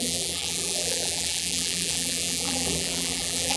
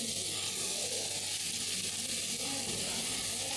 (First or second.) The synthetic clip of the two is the first